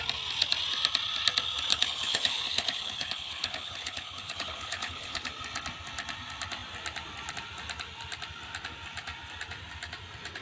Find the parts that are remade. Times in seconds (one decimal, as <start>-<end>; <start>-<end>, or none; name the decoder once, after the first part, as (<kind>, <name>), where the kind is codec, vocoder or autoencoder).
1.7-5.3 (codec, HILCodec)